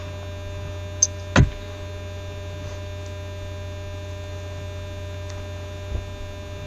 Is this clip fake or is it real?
real